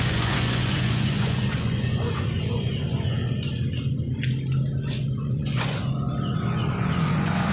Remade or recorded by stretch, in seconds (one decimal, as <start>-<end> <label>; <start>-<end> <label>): 0.0-3.2 remade; 3.2-4.8 recorded; 4.8-7.5 remade